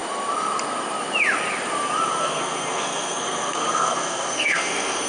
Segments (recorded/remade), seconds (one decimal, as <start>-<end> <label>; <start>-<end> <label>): 0.0-2.2 recorded; 2.2-5.1 remade